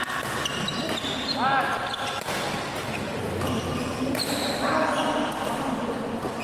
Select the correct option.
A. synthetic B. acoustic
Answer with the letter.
B